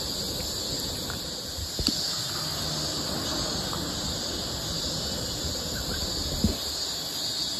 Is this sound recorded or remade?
recorded